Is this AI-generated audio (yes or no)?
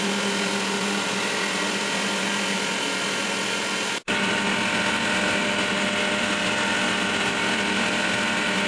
no